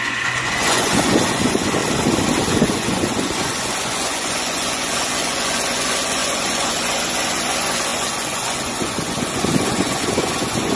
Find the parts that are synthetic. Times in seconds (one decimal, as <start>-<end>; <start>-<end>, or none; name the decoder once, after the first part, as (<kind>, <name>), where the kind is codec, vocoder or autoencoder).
0.0-1.8 (vocoder, Vocos); 2.5-10.8